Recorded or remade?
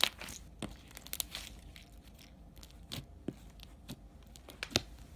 recorded